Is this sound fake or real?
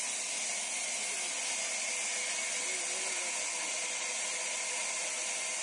real